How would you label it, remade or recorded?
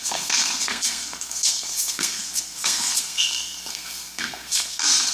remade